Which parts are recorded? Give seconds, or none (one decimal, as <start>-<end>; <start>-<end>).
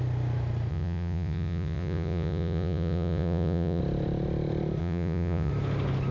0.0-0.7; 3.8-4.8; 5.5-6.1